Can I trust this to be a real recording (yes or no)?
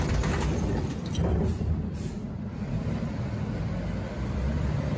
no